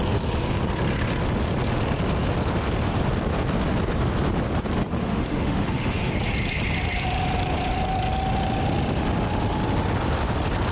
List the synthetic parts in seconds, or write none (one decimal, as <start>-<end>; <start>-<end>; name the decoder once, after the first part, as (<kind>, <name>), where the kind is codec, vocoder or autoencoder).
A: 5.0-6.1 (autoencoder, DAC-VAE)